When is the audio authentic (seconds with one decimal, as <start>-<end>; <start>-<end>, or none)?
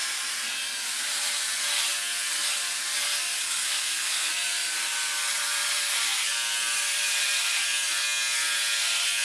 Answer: 0.0-3.4; 4.3-9.2